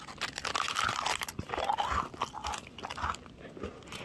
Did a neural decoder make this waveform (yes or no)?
no